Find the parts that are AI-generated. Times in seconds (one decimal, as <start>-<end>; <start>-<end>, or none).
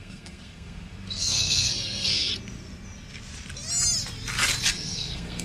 0.0-2.3; 4.7-5.4